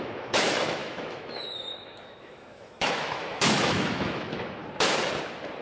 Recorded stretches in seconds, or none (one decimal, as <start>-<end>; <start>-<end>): 4.6-5.6